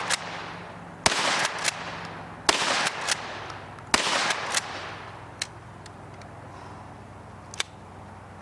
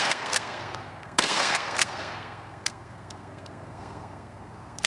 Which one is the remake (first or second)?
second